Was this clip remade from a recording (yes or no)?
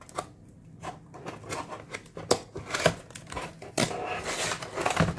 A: no